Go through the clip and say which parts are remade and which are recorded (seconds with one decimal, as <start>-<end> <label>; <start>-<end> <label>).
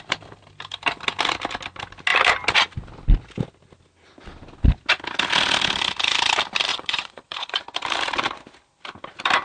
0.0-6.7 recorded; 6.7-7.6 remade; 7.6-9.4 recorded